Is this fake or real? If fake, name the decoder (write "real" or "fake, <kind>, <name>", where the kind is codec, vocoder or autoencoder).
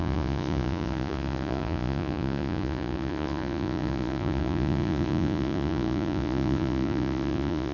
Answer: fake, vocoder, Vocos